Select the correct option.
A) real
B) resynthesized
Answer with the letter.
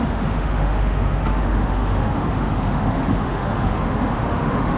B